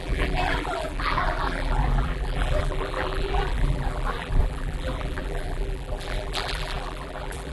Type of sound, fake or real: fake